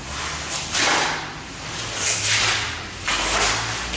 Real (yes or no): yes